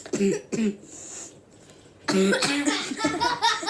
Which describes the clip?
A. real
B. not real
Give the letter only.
A